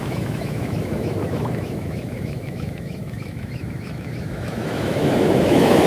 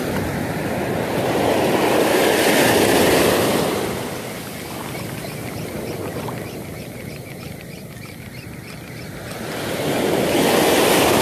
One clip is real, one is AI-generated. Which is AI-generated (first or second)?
first